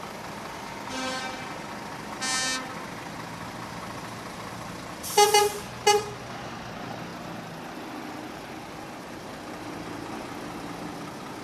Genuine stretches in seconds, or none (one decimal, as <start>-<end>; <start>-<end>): 0.0-11.4